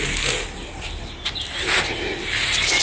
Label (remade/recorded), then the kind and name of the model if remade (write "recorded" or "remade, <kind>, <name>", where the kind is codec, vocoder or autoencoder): recorded